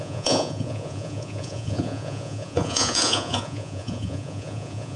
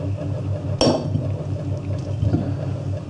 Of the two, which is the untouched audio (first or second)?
second